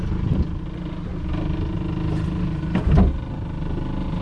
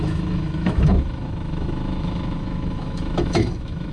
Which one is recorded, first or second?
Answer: first